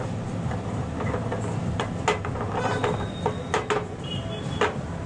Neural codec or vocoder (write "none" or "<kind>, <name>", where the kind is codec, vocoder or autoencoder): none